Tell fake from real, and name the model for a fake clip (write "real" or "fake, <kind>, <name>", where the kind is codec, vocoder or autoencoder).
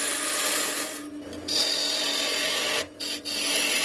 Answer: real